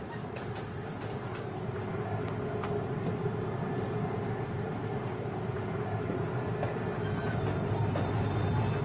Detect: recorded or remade recorded